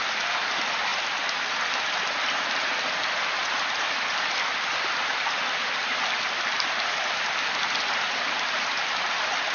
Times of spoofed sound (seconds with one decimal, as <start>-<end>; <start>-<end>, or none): 3.4-5.8